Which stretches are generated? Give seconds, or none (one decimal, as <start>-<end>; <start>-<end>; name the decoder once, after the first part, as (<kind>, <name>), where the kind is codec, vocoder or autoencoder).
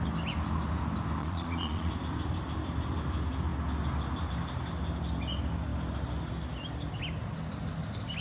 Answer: 1.2-1.9 (vocoder, Vocos)